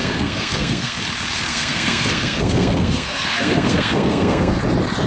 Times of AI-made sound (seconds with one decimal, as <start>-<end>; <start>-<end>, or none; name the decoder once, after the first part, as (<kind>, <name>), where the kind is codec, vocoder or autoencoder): 0.0-1.0 (codec, SNAC); 1.5-4.6